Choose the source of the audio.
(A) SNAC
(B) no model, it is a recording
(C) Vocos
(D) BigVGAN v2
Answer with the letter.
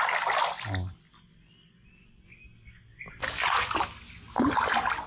B